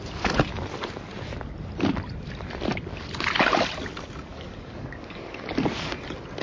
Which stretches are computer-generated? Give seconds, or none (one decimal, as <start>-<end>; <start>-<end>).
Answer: 4.3-5.5